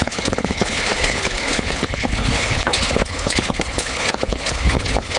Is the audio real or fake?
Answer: fake